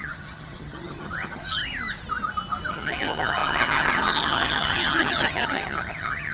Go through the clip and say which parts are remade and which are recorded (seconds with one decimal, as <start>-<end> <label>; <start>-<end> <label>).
0.0-1.6 remade; 1.6-2.7 recorded; 2.7-6.3 remade